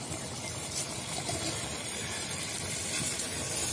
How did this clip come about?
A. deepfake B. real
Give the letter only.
B